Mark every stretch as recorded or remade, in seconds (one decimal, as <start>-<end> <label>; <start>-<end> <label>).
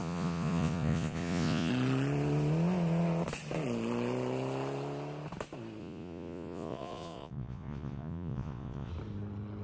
0.0-1.7 remade; 1.7-5.8 recorded; 5.8-8.9 remade; 8.9-9.6 recorded